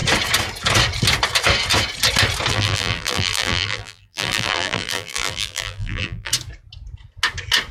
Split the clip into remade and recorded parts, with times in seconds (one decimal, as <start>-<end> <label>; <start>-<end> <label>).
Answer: 0.0-2.5 recorded; 2.5-6.3 remade; 6.3-7.7 recorded